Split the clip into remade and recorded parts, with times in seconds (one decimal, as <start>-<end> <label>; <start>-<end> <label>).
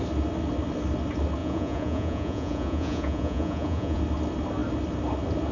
0.0-1.4 recorded; 1.4-4.0 remade; 4.0-5.5 recorded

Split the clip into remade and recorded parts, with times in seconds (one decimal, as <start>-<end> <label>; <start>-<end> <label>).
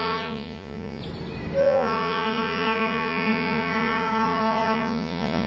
0.0-1.0 remade; 1.0-1.6 recorded; 1.6-5.5 remade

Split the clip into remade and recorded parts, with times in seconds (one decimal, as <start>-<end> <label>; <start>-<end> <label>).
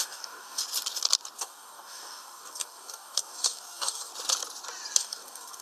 0.0-0.6 remade; 0.6-1.4 recorded; 1.4-4.1 remade; 4.1-5.0 recorded; 5.0-5.6 remade